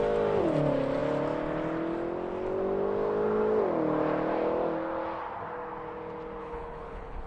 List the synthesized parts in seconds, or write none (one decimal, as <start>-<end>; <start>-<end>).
6.4-7.3